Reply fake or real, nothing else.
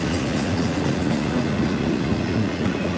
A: fake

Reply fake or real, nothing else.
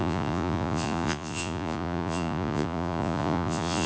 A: fake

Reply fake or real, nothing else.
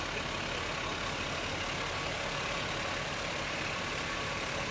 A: real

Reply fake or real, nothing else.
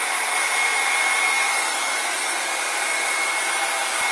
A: real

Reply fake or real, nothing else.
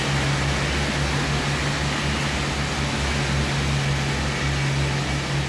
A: real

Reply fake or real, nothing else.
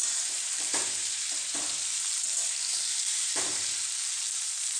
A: fake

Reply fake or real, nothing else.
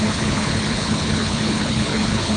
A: fake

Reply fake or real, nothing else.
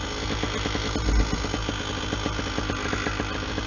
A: real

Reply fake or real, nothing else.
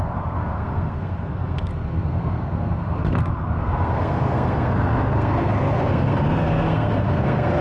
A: fake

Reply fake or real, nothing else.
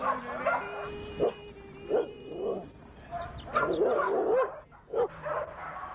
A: real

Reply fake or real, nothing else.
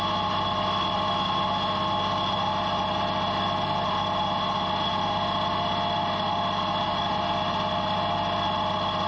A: real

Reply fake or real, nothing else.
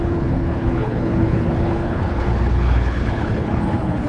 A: fake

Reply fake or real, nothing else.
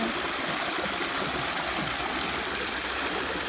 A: real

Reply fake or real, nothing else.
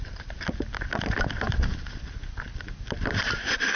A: real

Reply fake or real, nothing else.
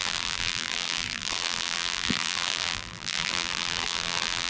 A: fake